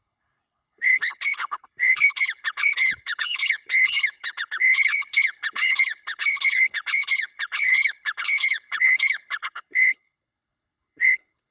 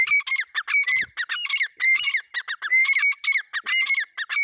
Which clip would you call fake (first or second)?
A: first